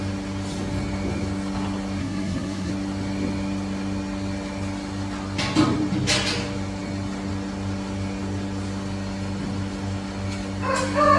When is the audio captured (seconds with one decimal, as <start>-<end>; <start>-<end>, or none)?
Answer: 0.0-2.0; 2.7-11.2

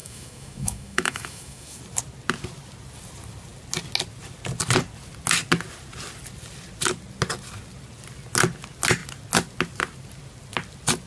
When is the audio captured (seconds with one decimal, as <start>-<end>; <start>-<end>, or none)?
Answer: 1.8-11.1